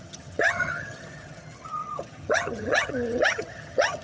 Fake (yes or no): yes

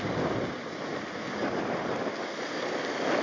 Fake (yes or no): no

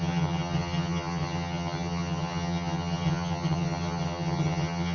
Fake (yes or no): yes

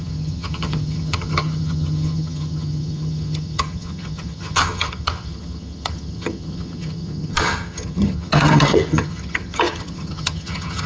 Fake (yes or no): yes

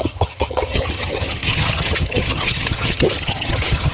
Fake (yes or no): yes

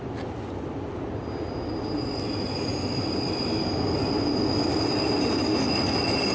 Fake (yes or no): no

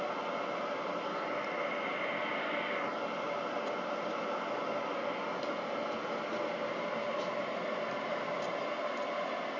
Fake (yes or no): no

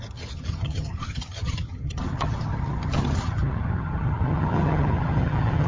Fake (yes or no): yes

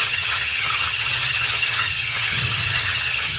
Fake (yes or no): yes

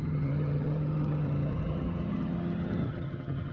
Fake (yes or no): yes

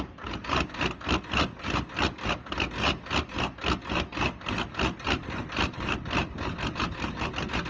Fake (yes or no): no